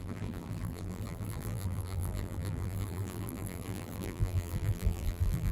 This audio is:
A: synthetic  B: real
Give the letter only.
A